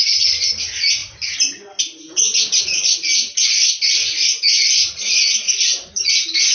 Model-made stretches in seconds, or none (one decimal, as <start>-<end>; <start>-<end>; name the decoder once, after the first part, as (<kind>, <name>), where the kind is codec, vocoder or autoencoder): none